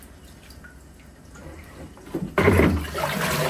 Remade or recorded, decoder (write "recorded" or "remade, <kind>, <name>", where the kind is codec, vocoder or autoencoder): recorded